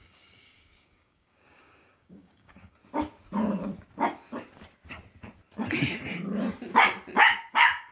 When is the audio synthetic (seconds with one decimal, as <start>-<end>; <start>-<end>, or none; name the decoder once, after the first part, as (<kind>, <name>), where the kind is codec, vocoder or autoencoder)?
0.0-2.8 (codec, DAC); 7.5-7.9